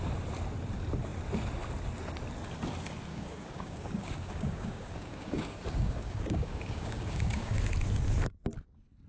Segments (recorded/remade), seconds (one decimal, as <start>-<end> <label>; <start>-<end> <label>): 0.0-3.1 recorded; 3.1-7.7 remade; 7.7-9.1 recorded